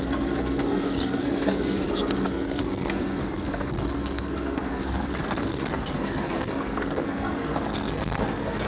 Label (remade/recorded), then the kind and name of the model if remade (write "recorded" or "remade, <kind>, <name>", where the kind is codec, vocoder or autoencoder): remade, codec, SNAC